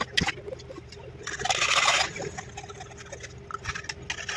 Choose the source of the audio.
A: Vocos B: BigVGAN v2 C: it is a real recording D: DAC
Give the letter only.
C